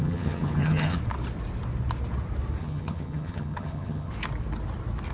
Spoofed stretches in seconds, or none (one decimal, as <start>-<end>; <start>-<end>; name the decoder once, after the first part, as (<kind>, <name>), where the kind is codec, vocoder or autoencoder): 0.0-1.0 (vocoder, HiFi-GAN); 2.6-4.1